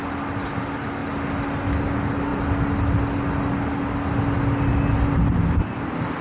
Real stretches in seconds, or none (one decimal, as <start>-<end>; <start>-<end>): 0.0-6.2